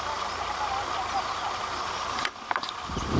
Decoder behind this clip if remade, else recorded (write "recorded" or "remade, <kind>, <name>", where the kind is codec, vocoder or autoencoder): recorded